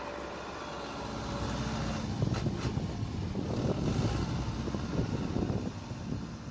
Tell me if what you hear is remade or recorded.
recorded